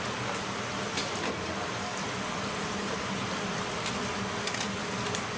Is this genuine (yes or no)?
yes